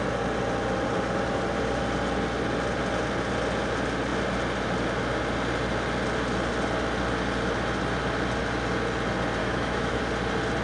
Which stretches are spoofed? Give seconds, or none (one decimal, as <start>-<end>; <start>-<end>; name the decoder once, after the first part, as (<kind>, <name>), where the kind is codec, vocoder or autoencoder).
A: 9.4-10.0 (autoencoder, DAC-VAE)